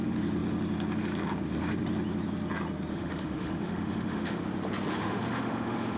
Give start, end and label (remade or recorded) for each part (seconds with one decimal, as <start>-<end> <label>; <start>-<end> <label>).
0.0-2.9 recorded; 2.9-4.4 remade; 4.4-4.9 recorded; 4.9-6.0 remade